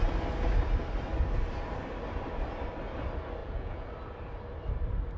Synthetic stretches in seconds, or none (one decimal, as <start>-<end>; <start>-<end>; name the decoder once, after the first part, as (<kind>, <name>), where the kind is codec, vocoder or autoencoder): 3.4-3.9 (vocoder, Vocos)